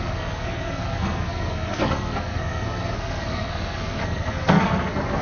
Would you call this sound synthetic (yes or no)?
yes